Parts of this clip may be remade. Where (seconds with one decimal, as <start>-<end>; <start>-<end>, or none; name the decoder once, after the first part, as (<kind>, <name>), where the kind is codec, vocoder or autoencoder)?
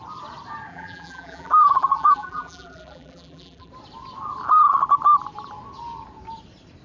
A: 0.7-3.7 (vocoder, BigVGAN v2)